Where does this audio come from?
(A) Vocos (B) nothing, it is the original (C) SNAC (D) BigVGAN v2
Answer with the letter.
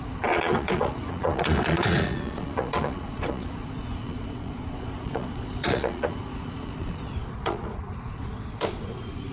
A